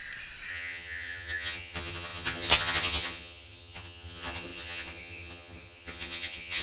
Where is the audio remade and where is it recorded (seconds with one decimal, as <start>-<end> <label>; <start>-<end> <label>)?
0.0-0.5 recorded; 0.5-6.6 remade